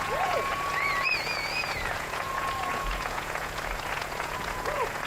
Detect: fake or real fake